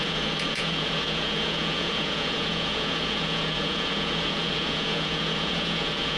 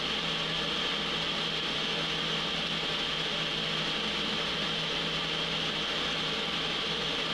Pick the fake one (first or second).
first